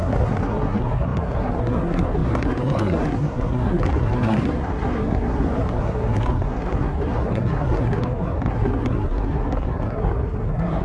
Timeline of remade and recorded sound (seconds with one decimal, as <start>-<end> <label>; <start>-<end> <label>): 0.0-10.8 remade